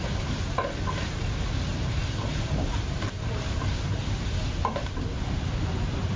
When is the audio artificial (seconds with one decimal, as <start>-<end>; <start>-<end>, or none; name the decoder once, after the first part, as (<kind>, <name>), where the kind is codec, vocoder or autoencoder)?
1.7-5.4 (vocoder, BigVGAN v2)